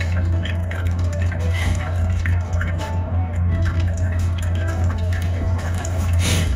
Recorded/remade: remade